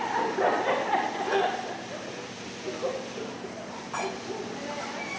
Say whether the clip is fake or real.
real